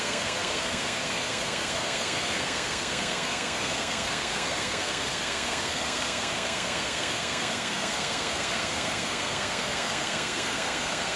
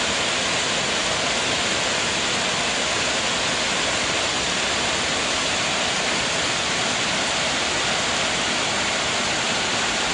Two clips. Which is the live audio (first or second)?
second